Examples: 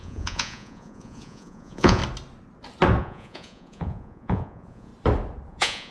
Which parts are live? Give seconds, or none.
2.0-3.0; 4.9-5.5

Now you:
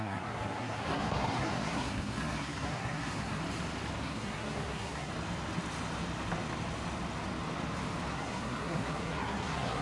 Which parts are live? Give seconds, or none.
3.4-4.0; 5.1-8.1

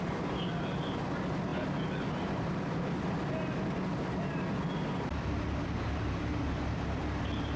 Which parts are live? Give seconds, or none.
0.0-7.6

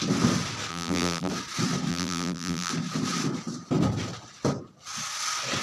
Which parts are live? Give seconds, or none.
0.0-0.7; 1.3-1.9; 2.7-5.6

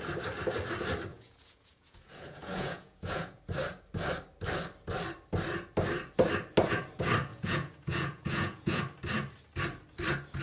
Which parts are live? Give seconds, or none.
0.0-1.1; 3.4-7.3; 8.8-10.4

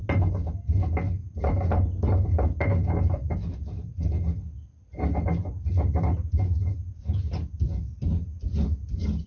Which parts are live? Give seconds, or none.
0.0-9.3

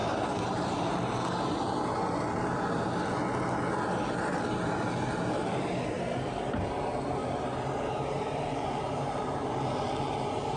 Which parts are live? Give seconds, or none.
0.0-5.4; 6.3-7.2; 9.9-10.6

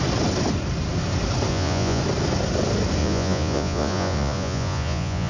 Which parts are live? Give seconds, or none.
0.0-1.5; 2.0-3.0